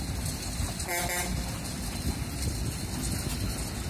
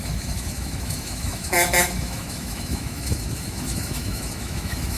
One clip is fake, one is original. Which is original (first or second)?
first